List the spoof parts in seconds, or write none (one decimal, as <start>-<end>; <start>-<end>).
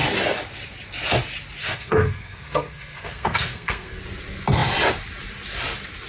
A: 1.6-4.0